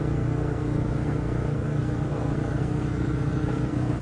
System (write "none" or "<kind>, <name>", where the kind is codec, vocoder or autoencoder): codec, SNAC